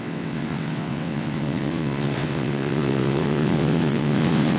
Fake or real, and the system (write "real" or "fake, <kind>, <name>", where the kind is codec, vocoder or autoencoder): fake, vocoder, WaveNeXt